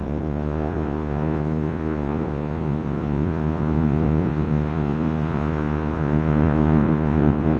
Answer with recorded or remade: remade